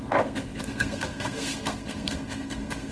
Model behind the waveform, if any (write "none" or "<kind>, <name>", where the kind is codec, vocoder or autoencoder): codec, SNAC